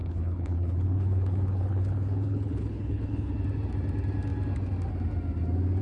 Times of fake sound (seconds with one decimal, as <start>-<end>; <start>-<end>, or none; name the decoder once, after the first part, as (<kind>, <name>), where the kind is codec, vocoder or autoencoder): 0.0-3.3 (codec, HILCodec)